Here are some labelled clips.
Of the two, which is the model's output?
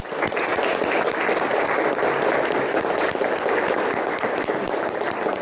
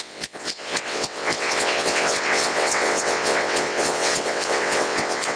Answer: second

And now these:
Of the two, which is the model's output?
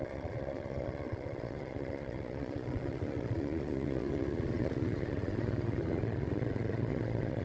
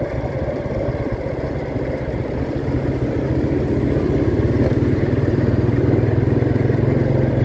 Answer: first